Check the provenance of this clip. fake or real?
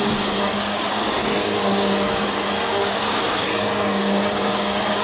fake